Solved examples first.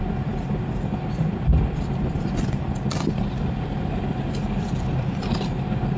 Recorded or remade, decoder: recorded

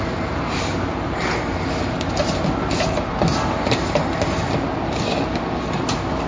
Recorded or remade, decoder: recorded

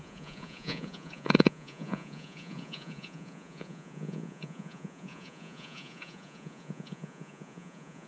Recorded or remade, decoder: remade, vocoder, Vocos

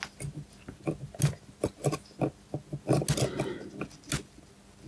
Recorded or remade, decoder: recorded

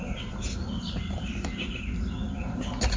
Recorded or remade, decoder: recorded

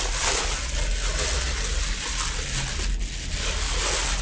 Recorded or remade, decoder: recorded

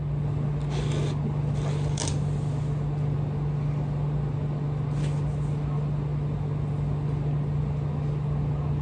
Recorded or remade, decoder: recorded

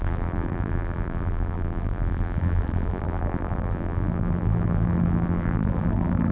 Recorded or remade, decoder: remade, vocoder, BigVGAN v2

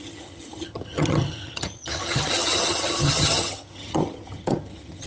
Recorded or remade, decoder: remade, vocoder, HiFi-GAN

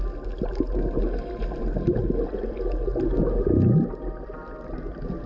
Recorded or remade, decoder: recorded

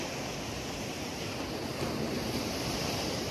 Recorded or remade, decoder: recorded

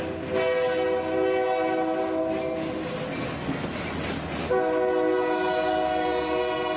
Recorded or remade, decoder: recorded